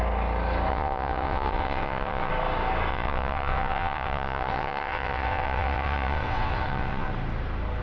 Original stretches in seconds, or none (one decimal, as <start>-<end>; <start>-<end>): 0.0-0.7; 2.3-2.9; 7.1-7.8